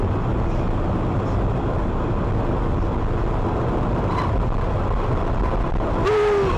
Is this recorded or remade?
recorded